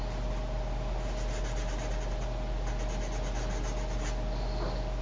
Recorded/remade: recorded